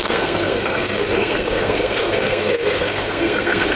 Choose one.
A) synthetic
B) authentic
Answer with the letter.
A